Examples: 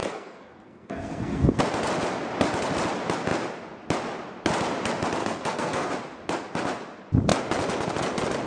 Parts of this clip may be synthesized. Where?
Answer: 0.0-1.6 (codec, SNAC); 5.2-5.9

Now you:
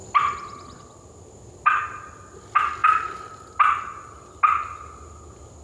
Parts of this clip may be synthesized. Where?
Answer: none